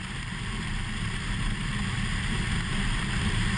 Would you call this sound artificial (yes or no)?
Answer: yes